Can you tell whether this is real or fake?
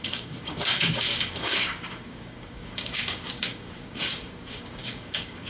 fake